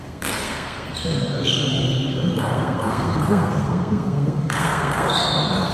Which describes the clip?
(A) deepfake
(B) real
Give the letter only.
A